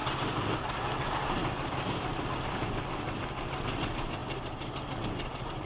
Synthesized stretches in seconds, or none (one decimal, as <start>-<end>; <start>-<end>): none